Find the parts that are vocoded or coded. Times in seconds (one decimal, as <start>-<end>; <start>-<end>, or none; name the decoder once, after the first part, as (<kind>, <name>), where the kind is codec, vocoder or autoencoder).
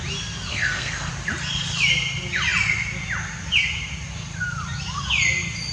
0.5-1.1 (codec, SNAC)